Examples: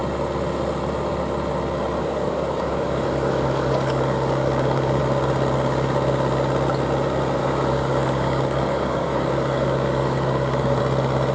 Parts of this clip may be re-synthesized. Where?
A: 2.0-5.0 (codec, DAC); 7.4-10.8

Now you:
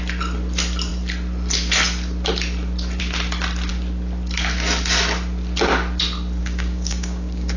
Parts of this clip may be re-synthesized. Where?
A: 6.4-7.6 (codec, DAC)

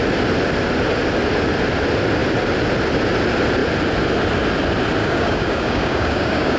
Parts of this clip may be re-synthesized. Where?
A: 5.0-6.6 (codec, DAC)